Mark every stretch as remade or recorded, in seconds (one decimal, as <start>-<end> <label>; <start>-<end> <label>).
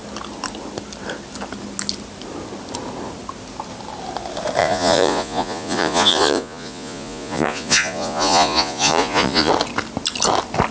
0.0-4.6 recorded; 4.6-9.5 remade; 9.5-10.7 recorded